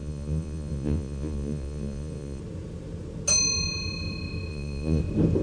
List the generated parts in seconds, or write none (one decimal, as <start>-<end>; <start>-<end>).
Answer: 0.0-2.4; 4.5-5.0